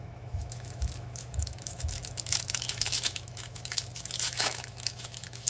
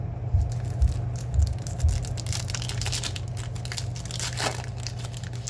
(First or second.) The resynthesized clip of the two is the first